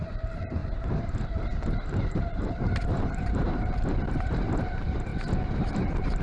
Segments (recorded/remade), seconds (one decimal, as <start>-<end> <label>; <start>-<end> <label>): 0.0-5.1 remade; 5.1-5.7 recorded; 5.7-6.2 remade